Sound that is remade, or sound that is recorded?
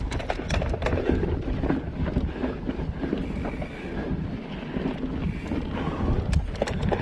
recorded